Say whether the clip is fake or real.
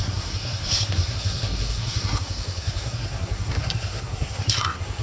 fake